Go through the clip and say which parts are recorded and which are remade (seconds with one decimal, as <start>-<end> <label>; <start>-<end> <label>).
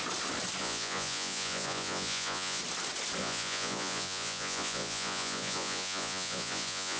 0.0-0.6 recorded; 0.6-2.6 remade; 2.6-3.2 recorded; 3.2-7.0 remade